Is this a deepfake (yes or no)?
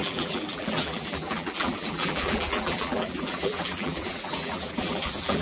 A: yes